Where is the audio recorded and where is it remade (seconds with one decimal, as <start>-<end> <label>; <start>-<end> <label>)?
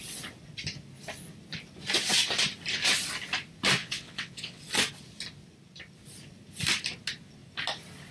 0.0-3.8 recorded; 3.8-4.6 remade; 4.6-8.1 recorded